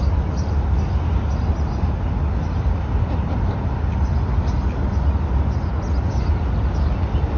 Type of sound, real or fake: real